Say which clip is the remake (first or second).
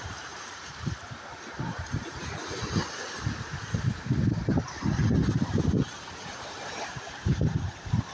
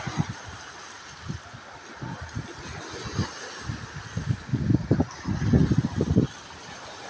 first